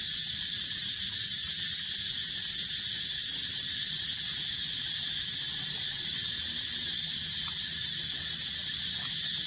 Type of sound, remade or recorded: recorded